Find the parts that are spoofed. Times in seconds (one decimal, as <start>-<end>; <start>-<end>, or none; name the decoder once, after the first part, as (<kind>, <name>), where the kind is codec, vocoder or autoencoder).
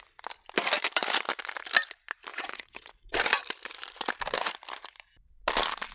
2.3-2.9 (vocoder, WaveNeXt)